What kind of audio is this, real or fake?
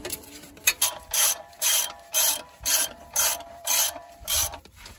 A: fake